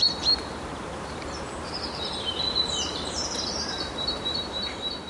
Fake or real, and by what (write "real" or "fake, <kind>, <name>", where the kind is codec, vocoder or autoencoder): fake, vocoder, BigVGAN v2